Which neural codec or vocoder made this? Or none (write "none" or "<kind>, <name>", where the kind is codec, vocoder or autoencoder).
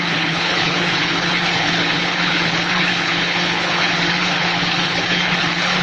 codec, HILCodec